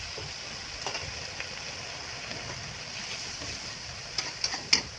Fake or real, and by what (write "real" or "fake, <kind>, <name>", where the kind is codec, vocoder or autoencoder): real